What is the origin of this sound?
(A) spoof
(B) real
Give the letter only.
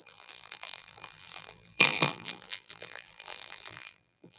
A